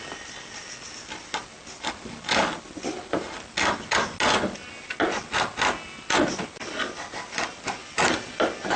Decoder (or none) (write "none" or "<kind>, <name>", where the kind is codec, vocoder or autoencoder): none